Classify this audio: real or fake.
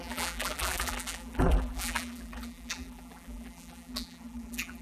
fake